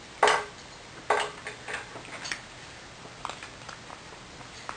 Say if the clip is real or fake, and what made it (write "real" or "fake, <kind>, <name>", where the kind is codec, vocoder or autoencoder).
real